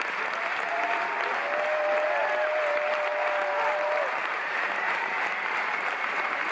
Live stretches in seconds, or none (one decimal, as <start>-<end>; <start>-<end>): 0.0-4.2; 5.2-6.5